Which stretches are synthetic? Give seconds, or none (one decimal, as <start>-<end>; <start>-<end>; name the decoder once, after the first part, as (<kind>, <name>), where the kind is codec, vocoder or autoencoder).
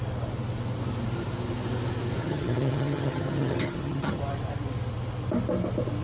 2.2-4.2 (vocoder, HiFi-GAN)